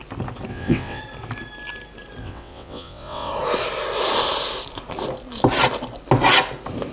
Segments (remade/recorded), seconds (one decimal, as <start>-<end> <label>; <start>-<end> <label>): 0.0-0.5 recorded; 0.5-1.0 remade; 1.0-2.2 recorded; 2.2-3.3 remade; 3.3-6.9 recorded

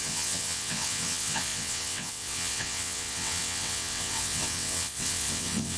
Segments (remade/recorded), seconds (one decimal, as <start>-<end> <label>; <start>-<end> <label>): 0.0-5.8 remade

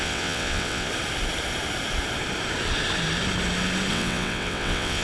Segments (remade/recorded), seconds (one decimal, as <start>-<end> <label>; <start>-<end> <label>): 0.0-0.9 remade; 0.9-3.9 recorded; 3.9-5.0 remade

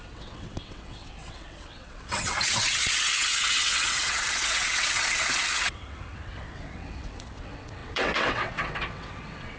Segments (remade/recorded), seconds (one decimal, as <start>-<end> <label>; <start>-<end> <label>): 0.0-9.6 remade